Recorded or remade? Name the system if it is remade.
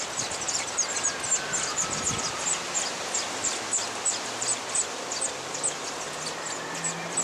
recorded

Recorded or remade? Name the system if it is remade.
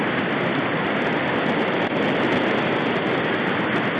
recorded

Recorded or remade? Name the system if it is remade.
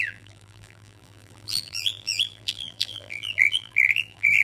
remade, vocoder, BigVGAN v2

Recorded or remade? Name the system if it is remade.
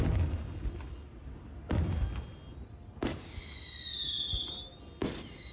recorded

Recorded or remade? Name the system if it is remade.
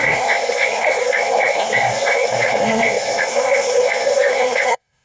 remade, codec, SNAC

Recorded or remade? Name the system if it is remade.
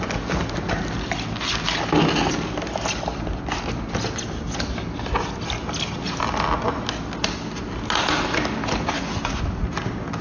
recorded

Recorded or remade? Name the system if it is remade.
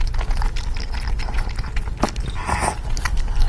recorded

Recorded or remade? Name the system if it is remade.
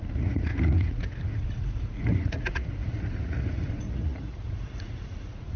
remade, vocoder, Vocos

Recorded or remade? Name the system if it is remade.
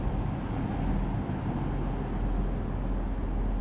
recorded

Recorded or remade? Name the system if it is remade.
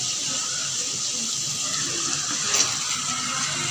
recorded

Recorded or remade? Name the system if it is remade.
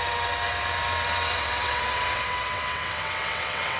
remade, vocoder, WaveNeXt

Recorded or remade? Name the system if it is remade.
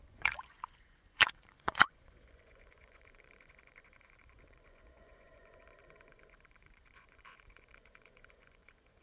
remade, vocoder, Vocos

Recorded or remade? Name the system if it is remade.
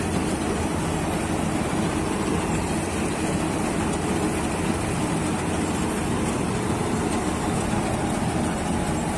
recorded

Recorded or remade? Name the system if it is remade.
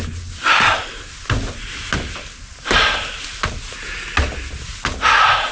recorded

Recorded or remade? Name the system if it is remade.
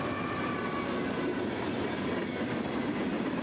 recorded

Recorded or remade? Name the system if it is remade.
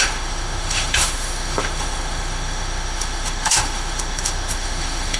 remade, autoencoder, DAC-VAE